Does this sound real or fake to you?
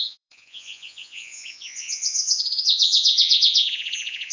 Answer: fake